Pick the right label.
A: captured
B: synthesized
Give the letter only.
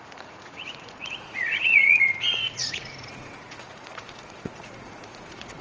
B